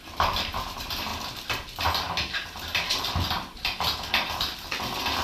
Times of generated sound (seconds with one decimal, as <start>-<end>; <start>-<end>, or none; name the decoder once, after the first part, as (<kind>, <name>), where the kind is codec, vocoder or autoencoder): none